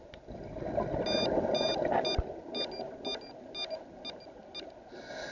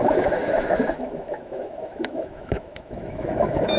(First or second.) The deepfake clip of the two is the second